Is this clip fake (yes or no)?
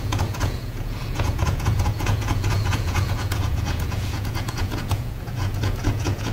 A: yes